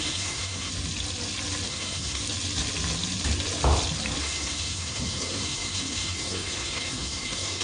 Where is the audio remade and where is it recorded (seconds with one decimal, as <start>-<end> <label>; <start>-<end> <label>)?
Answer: 0.0-0.7 remade; 0.7-1.7 recorded; 1.7-2.2 remade; 2.2-4.2 recorded; 4.2-7.6 remade